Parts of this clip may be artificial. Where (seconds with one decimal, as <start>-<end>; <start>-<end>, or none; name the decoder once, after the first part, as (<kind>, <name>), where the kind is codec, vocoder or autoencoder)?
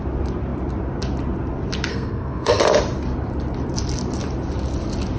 1.9-2.6 (codec, SNAC)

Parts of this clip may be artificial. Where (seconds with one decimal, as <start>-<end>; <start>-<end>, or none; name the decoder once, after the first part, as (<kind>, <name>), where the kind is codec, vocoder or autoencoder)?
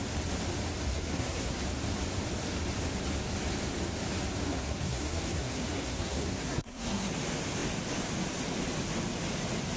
0.9-1.6 (codec, SNAC); 4.4-7.1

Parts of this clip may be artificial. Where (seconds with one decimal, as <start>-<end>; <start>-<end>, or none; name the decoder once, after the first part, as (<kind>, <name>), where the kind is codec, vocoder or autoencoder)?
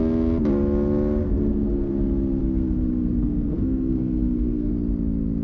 1.2-1.9 (codec, SNAC); 2.4-4.7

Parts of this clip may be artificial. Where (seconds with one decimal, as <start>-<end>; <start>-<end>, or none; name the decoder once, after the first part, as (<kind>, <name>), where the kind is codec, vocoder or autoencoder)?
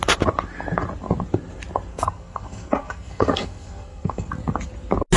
1.9-4.3 (codec, SNAC)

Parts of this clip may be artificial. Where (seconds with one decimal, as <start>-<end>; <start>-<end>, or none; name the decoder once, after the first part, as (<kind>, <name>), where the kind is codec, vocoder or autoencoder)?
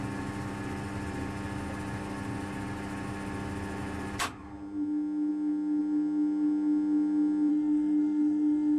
7.5-8.8 (codec, SNAC)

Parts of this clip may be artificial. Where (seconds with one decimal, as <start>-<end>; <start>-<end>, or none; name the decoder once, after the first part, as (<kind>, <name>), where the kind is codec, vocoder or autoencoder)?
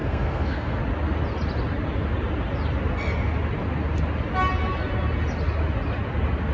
0.0-0.8 (codec, SNAC)